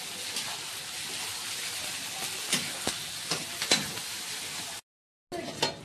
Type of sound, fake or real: real